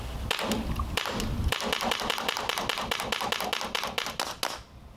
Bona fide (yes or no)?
yes